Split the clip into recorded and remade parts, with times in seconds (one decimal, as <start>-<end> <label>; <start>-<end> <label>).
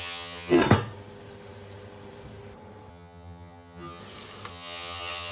0.0-0.6 remade; 0.6-2.9 recorded; 2.9-4.0 remade; 4.0-4.5 recorded; 4.5-5.3 remade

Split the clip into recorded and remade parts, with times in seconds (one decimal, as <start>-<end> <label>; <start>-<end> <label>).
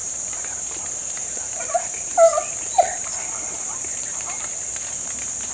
0.0-0.6 remade; 0.6-1.2 recorded; 1.2-2.3 remade; 2.3-3.9 recorded; 3.9-5.1 remade; 5.1-5.5 recorded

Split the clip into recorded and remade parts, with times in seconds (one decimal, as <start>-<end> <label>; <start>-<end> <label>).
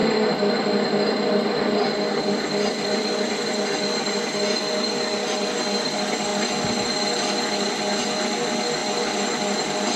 0.0-10.0 recorded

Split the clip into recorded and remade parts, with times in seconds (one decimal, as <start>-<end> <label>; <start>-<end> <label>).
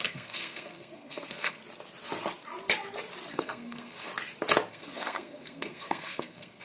0.0-1.6 remade; 1.6-3.3 recorded; 3.3-4.1 remade; 4.1-4.7 recorded; 4.7-6.6 remade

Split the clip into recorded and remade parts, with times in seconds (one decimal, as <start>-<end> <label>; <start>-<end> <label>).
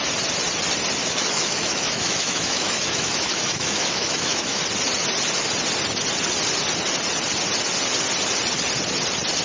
0.0-1.0 recorded; 1.0-4.6 remade; 4.6-9.4 recorded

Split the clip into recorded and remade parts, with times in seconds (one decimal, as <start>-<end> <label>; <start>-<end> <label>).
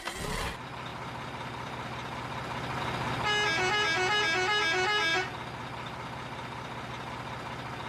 0.0-7.9 recorded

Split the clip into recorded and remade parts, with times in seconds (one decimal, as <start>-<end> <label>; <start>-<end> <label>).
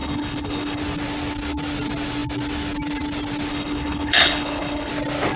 0.0-0.8 remade; 0.8-3.5 recorded; 3.5-4.9 remade; 4.9-5.4 recorded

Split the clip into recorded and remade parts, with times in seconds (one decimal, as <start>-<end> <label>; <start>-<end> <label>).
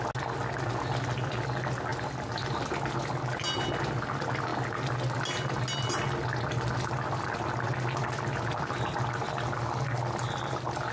0.0-10.9 recorded